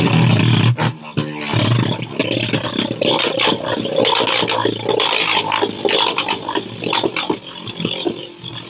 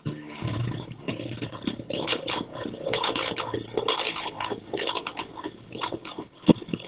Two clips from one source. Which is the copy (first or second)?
second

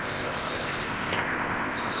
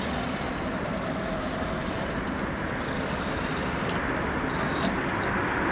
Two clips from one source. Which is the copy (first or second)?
first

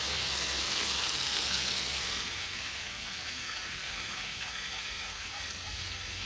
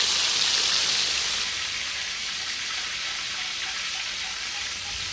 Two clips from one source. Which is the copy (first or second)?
first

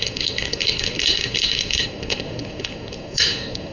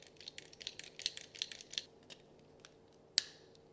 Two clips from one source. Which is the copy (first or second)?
first